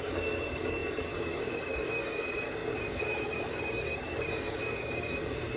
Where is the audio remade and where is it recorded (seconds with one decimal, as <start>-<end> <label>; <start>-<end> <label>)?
0.0-5.6 remade